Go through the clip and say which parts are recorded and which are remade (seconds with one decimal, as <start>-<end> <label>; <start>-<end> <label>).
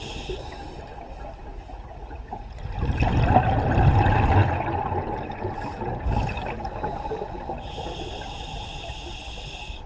0.0-1.5 recorded; 1.5-2.6 remade; 2.6-9.9 recorded